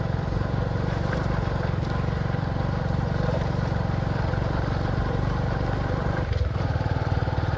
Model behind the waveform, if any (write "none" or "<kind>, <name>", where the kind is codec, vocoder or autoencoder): vocoder, BigVGAN v2